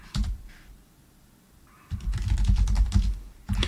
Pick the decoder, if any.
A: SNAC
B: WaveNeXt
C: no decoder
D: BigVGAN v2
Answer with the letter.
D